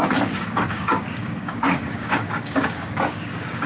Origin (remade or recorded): remade